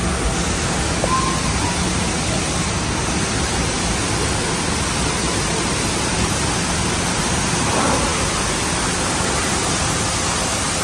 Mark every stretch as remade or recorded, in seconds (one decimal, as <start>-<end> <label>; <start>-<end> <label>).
0.0-5.3 recorded; 5.3-7.0 remade; 7.0-10.8 recorded